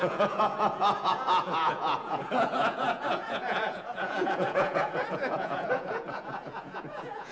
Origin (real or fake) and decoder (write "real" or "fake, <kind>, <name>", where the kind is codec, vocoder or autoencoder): fake, vocoder, Vocos